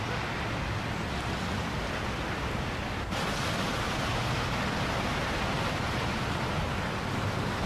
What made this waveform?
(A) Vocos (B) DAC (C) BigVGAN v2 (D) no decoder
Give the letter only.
D